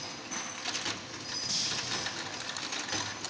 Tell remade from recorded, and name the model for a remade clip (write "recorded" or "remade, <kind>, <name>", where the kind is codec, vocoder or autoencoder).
recorded